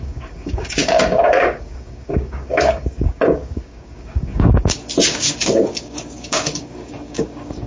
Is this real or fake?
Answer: fake